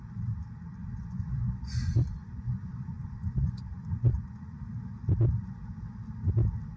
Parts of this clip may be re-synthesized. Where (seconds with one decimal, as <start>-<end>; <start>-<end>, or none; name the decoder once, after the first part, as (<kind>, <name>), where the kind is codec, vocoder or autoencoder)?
0.8-4.6 (vocoder, Vocos)